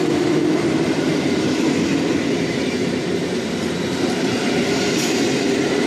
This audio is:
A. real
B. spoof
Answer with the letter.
B